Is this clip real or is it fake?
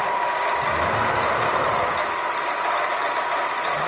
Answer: real